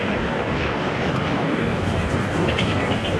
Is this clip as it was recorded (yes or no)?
no